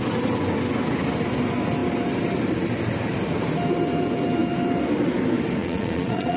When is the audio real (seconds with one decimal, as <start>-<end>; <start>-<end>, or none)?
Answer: 0.0-5.6